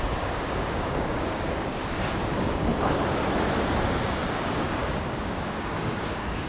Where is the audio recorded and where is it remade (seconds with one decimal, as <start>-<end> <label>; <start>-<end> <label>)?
0.0-2.7 remade; 2.7-3.9 recorded; 3.9-6.5 remade